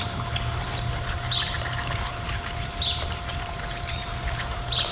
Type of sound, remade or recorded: remade